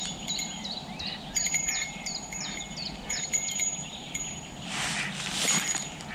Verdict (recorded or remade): remade